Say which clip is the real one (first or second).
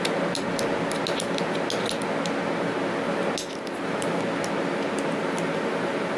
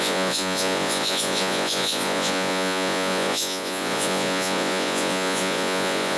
first